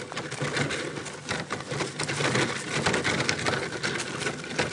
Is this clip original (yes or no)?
yes